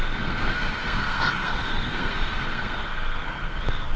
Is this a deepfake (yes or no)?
yes